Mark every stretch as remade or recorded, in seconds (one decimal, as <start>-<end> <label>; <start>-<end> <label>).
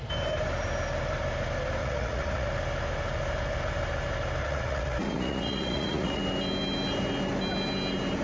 0.0-1.8 recorded; 1.8-2.5 remade; 2.5-4.4 recorded; 4.4-6.2 remade; 6.2-8.2 recorded